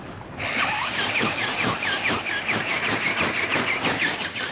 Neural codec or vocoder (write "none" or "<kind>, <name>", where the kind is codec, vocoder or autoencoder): none